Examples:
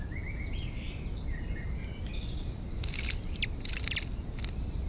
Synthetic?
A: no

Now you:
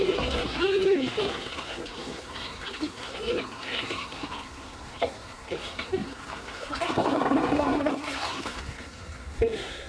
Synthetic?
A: yes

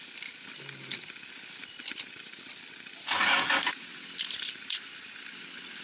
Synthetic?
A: no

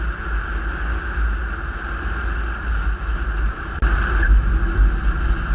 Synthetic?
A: no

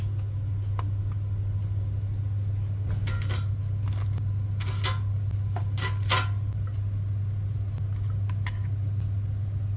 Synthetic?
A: no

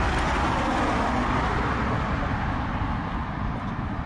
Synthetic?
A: no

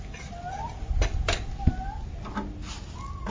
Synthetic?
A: no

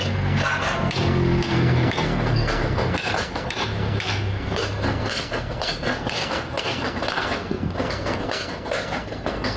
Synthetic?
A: yes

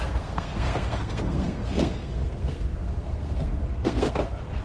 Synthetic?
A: yes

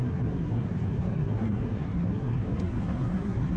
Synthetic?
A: yes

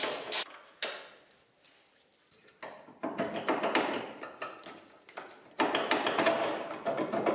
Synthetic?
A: no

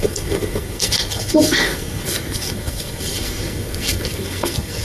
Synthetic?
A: yes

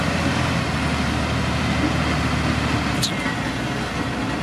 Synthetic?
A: no